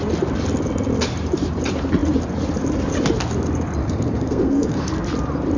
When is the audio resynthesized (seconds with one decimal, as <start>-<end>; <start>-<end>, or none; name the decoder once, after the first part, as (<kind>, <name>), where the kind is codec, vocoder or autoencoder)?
3.8-4.9 (codec, SNAC)